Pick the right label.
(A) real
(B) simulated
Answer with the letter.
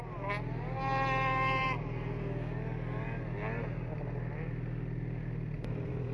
A